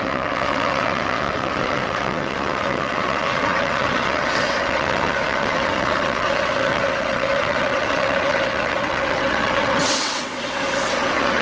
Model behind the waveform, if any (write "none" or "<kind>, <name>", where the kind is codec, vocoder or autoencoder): vocoder, WaveNeXt